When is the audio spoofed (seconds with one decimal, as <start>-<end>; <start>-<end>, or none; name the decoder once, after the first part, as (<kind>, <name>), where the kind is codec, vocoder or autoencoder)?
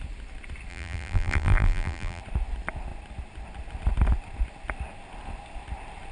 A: 0.7-2.2 (vocoder, BigVGAN v2)